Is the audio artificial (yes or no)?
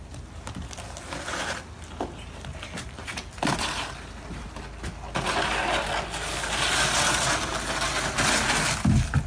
no